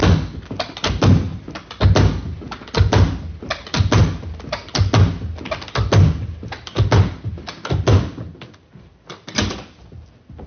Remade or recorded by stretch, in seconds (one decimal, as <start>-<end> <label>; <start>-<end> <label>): 0.0-10.5 recorded